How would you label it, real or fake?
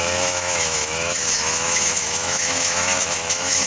fake